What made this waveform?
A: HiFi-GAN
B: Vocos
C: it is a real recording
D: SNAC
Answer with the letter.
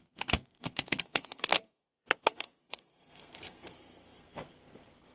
D